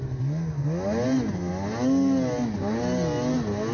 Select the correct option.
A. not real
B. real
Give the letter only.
B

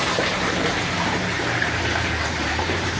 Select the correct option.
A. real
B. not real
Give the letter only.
B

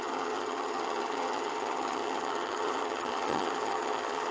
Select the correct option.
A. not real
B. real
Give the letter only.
A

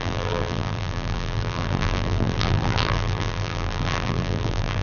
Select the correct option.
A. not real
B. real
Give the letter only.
A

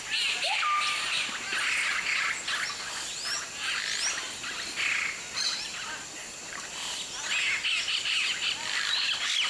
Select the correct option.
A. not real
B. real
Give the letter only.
B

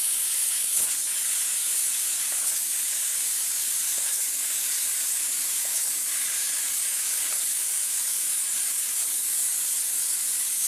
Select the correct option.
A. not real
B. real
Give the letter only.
A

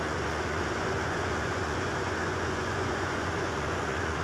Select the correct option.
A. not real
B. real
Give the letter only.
A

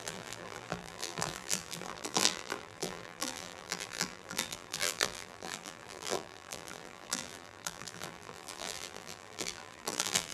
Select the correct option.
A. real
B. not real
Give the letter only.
B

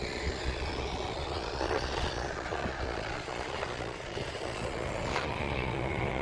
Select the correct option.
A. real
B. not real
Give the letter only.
B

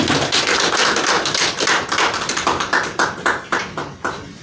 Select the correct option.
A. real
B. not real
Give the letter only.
A